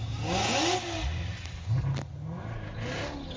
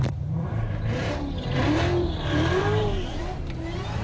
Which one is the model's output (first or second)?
second